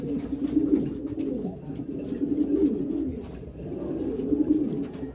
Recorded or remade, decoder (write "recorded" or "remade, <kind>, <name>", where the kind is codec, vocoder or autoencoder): recorded